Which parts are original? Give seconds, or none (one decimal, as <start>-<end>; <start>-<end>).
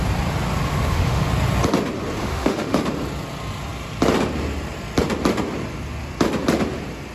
0.0-0.7; 1.3-2.2; 2.8-7.1